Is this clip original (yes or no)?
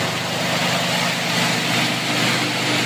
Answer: yes